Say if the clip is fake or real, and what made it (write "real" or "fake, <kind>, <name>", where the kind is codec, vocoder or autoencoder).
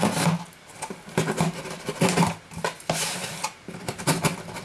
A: real